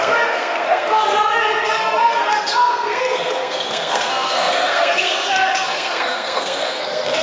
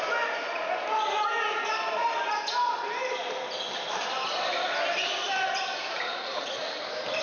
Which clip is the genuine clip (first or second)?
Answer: second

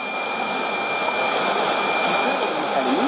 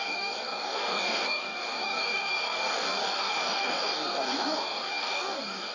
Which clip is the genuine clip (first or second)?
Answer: first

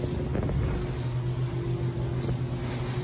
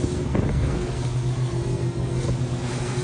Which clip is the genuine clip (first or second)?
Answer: first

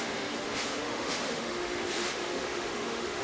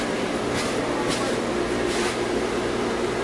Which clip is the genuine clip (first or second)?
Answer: second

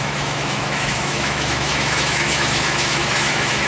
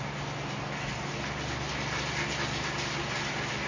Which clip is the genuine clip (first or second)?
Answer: second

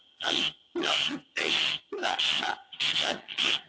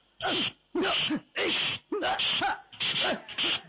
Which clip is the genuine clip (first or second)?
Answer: second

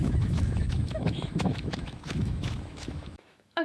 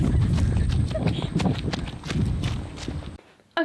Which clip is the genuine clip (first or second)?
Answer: second